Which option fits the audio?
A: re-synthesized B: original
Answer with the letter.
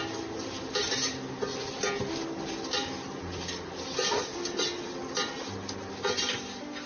B